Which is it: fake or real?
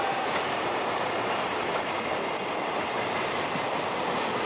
real